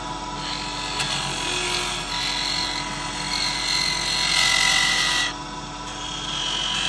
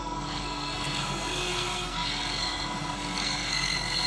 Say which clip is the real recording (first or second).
first